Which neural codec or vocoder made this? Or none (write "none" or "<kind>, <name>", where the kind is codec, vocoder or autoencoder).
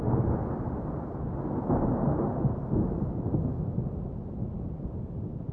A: none